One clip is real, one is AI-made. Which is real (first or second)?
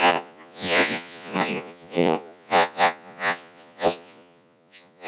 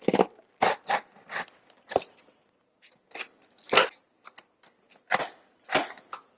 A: second